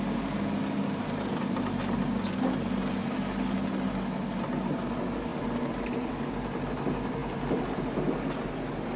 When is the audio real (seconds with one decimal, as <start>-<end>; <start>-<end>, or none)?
0.0-5.3; 6.1-9.0